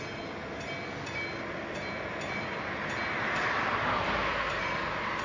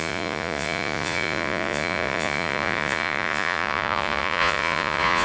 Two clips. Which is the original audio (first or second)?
first